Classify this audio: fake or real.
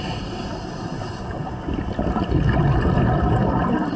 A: real